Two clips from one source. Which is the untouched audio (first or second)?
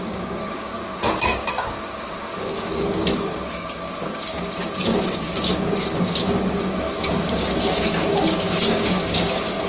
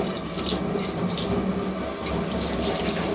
second